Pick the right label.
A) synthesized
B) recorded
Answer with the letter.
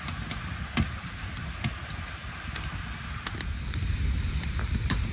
B